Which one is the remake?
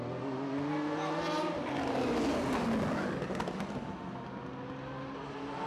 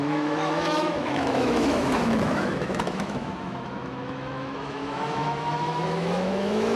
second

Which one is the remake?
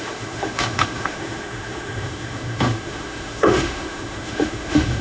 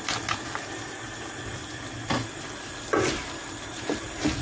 first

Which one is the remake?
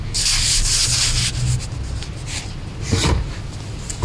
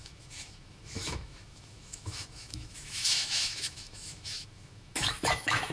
second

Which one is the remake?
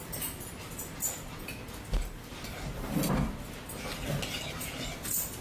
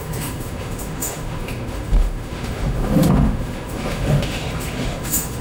second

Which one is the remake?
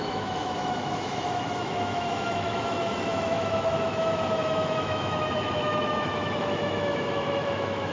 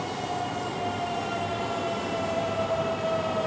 first